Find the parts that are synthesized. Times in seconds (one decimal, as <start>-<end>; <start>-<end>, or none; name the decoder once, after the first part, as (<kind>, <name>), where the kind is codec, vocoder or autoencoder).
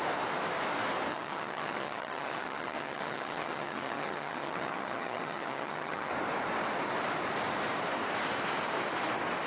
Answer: 1.1-6.1 (vocoder, HiFi-GAN)